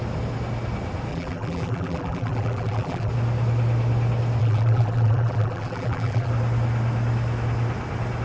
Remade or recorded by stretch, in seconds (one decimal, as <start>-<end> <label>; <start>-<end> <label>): 0.0-1.1 recorded; 1.1-3.1 remade; 3.1-4.4 recorded; 4.4-6.3 remade; 6.3-8.2 recorded